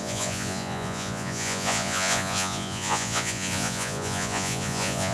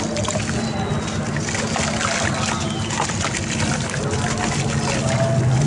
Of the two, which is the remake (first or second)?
first